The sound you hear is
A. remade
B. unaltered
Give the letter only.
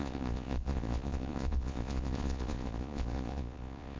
A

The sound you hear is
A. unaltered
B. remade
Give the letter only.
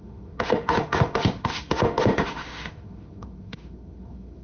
B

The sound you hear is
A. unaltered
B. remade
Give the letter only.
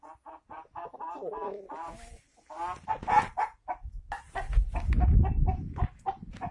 A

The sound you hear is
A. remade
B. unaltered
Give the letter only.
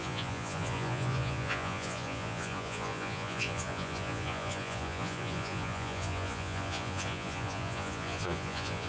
A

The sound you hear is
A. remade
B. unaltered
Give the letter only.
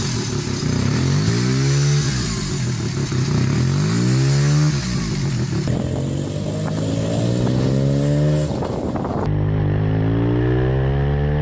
B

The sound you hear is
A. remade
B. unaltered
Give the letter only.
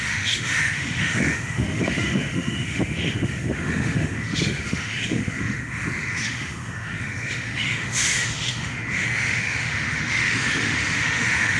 A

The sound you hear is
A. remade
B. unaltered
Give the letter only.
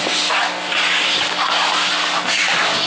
B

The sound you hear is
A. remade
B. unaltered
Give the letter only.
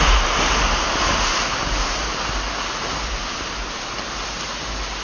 B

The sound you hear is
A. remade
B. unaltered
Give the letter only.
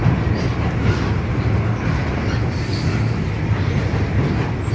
B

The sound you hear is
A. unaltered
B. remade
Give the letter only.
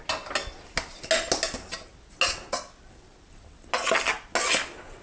A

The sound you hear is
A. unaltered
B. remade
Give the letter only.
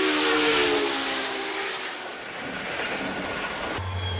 A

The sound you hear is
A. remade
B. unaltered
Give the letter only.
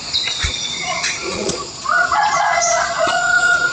A